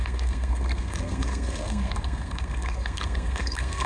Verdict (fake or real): fake